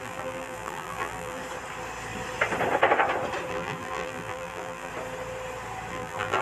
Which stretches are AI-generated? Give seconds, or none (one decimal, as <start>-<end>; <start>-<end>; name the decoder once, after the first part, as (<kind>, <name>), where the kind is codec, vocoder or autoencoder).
0.0-1.4 (vocoder, BigVGAN v2); 3.5-4.9; 5.9-6.4